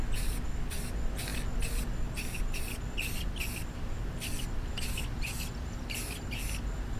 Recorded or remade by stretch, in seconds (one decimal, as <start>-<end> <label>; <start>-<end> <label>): 0.0-7.0 recorded